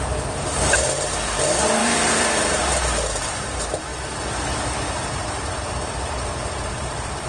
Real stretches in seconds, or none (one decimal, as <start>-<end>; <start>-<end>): 0.0-1.8; 2.6-3.9; 5.2-6.3